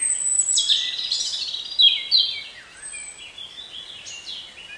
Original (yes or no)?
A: yes